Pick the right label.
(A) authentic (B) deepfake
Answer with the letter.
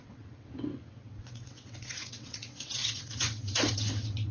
B